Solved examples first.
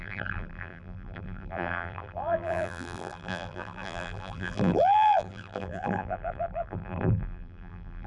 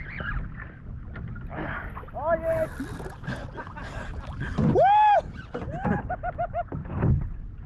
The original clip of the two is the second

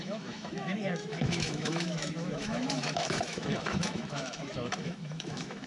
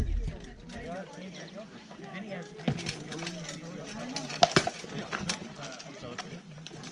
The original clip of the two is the second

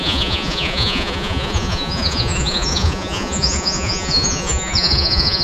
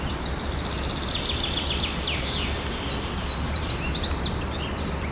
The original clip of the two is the second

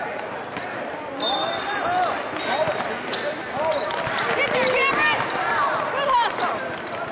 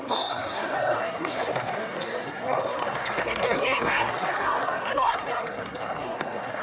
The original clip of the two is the first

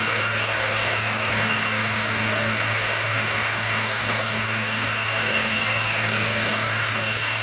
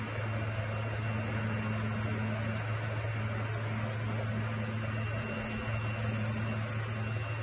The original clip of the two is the second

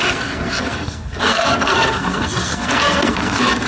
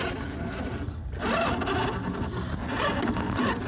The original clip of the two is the second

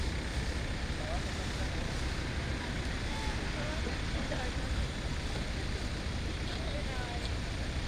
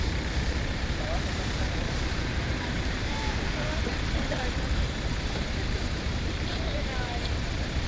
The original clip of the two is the first